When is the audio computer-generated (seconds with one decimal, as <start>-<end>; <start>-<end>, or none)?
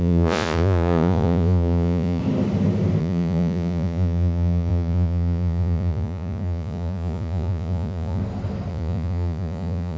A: 0.0-2.2; 3.0-8.2; 8.7-10.0